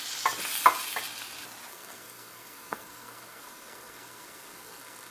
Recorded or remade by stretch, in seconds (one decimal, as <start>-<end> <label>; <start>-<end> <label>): 0.0-1.7 recorded; 1.7-5.1 remade